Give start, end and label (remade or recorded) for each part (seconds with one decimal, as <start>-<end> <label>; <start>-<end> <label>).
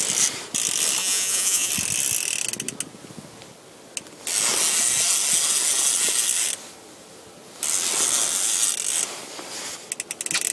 0.0-1.0 recorded; 1.0-1.7 remade; 1.7-10.5 recorded